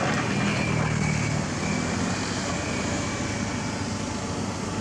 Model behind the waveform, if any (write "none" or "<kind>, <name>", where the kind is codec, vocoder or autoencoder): none